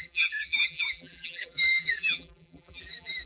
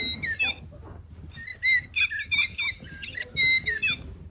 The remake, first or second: first